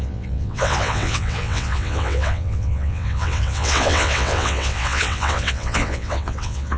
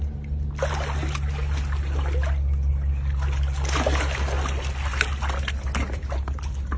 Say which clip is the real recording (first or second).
second